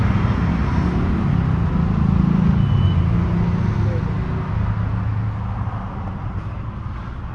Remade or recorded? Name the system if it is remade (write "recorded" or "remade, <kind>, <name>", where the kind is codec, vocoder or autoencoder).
recorded